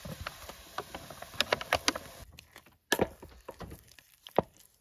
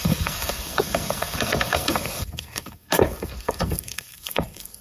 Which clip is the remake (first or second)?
second